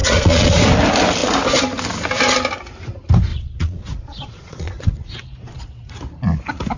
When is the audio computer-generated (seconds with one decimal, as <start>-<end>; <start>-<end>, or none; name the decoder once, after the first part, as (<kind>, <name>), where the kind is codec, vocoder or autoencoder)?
0.0-0.6 (vocoder, Vocos); 3.3-5.9